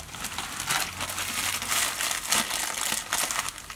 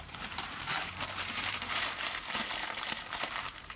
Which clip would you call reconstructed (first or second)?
second